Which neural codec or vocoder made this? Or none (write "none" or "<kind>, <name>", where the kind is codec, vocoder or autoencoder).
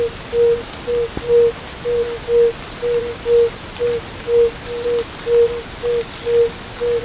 none